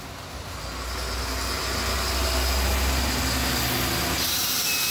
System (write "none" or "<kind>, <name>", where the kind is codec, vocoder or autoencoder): none